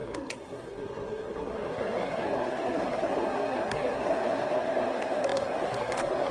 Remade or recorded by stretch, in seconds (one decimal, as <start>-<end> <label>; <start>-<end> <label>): 0.0-6.3 remade